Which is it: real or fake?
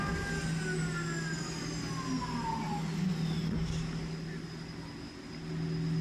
real